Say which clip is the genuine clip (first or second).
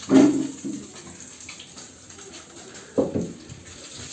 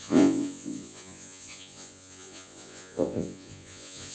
first